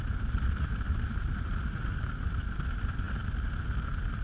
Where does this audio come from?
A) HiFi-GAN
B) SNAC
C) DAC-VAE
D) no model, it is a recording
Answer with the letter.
D